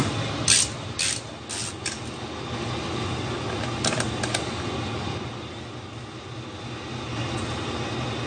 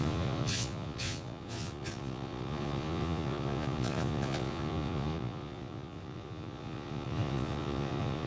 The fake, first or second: second